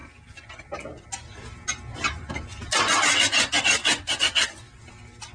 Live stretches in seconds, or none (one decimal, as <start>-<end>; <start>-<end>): 0.0-3.8; 4.8-5.3